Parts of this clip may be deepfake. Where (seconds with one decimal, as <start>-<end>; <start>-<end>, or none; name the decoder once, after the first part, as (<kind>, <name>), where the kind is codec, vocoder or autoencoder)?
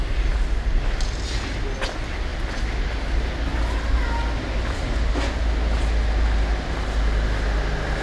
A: none